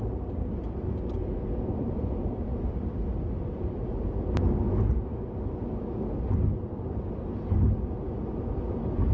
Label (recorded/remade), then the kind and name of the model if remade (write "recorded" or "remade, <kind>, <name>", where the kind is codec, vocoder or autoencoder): recorded